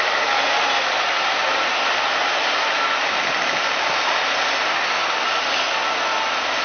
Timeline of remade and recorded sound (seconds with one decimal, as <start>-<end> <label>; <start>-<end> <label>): 0.0-6.6 recorded